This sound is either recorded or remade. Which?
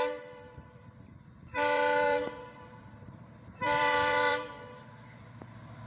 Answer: remade